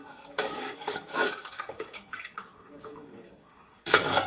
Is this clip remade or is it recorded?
remade